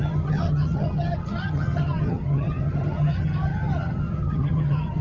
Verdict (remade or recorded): remade